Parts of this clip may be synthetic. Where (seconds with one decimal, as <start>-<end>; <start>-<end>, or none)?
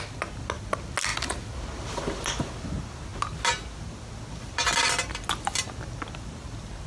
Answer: none